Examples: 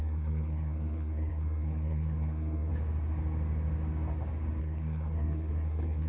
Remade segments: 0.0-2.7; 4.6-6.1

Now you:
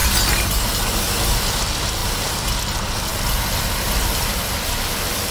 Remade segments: 2.0-2.5

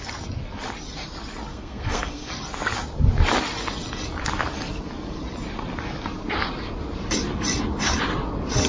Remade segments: 1.5-2.3

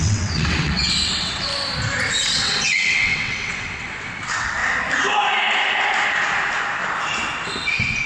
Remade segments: 0.0-1.5; 2.1-4.6

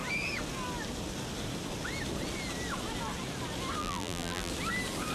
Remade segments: 3.8-4.5